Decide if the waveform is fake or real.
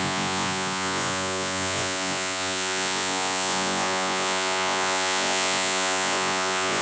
fake